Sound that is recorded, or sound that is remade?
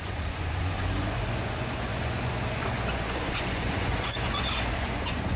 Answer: remade